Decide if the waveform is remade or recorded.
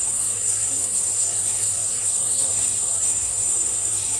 remade